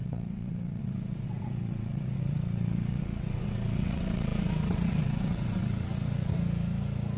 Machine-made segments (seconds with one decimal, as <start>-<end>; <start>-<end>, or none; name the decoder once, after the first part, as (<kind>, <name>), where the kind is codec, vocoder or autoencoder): 0.0-6.3 (vocoder, WaveNeXt)